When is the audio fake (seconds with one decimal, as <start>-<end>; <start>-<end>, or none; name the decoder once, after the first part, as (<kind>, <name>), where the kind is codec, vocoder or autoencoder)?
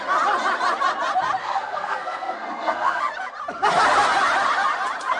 1.4-3.0 (codec, SNAC)